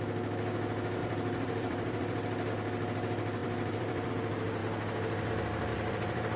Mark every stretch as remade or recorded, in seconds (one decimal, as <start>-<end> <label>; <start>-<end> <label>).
0.0-1.0 recorded; 1.0-2.5 remade; 2.5-3.4 recorded; 3.4-4.1 remade; 4.1-5.7 recorded; 5.7-6.4 remade